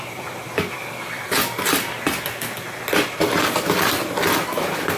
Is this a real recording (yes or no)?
yes